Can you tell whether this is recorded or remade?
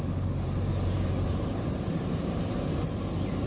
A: remade